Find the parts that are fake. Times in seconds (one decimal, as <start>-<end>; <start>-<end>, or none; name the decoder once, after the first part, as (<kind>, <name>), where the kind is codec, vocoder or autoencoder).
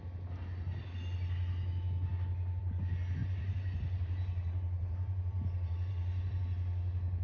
3.2-6.4 (vocoder, BigVGAN v2)